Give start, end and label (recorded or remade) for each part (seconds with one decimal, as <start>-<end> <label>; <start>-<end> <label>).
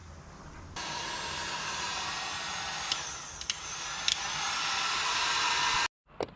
0.0-6.4 recorded